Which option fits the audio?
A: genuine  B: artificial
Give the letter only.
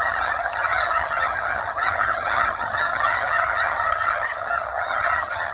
B